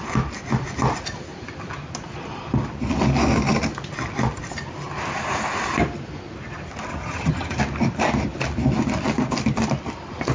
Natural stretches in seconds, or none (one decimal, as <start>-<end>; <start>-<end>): 0.0-6.9; 7.6-10.3